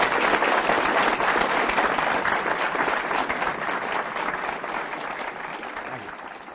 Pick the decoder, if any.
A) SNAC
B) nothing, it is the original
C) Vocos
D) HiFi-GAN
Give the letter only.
B